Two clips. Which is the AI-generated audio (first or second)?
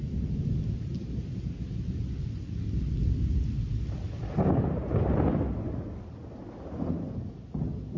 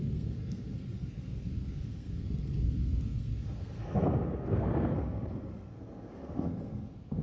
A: second